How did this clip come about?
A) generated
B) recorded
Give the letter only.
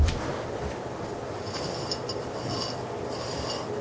B